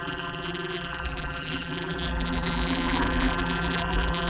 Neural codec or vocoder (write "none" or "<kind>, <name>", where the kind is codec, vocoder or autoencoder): vocoder, BigVGAN v2